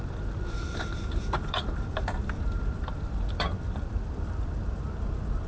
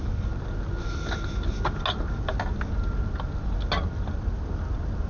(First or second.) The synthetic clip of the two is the first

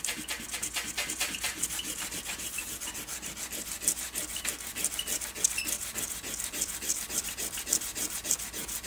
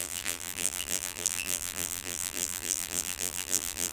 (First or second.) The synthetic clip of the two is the second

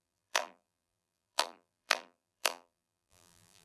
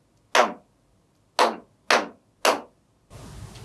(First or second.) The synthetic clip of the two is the first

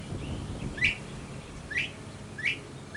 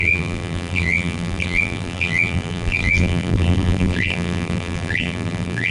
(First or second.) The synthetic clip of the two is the second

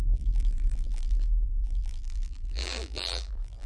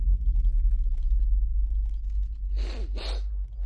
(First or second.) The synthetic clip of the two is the first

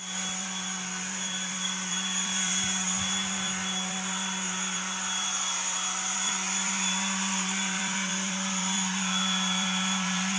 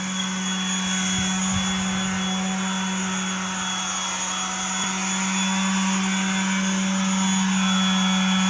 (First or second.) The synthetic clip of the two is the first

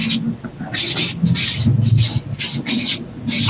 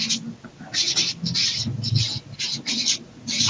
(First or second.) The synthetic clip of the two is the second